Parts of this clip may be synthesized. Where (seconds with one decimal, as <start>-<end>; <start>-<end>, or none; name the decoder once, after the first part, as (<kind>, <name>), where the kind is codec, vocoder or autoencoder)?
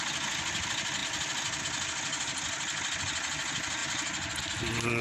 none